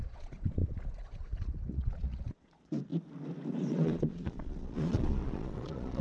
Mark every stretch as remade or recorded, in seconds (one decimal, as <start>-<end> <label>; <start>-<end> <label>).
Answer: 0.0-2.9 remade; 2.9-3.7 recorded; 3.7-6.0 remade